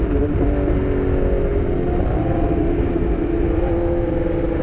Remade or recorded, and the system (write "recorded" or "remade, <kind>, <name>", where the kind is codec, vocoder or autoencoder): recorded